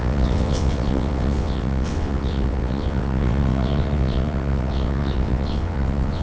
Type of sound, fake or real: fake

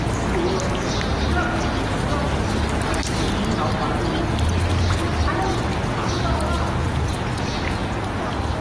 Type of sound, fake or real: real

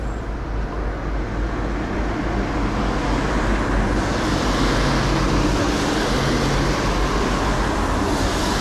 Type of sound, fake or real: real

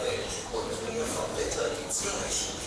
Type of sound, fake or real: fake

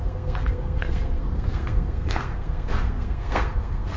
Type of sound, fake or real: fake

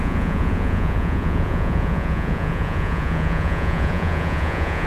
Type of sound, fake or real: fake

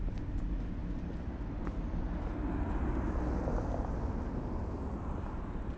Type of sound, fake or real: real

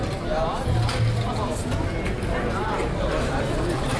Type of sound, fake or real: real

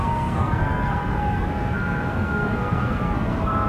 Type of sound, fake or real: fake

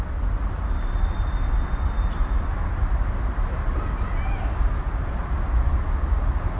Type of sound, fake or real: real